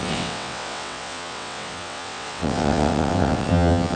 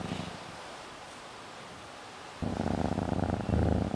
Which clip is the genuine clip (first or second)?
second